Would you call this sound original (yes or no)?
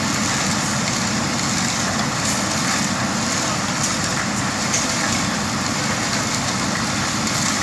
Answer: yes